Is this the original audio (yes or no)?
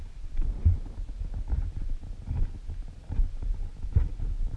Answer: yes